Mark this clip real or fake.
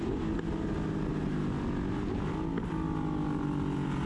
real